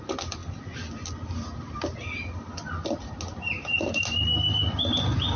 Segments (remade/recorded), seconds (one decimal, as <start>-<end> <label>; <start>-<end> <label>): 0.0-5.4 recorded